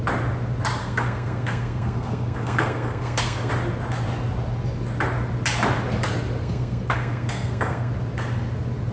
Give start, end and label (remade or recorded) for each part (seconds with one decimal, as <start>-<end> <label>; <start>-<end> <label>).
0.0-0.8 recorded; 0.8-3.5 remade; 3.5-6.4 recorded; 6.4-7.9 remade; 7.9-8.9 recorded